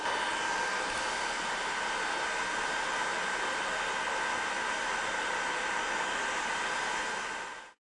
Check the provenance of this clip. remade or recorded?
recorded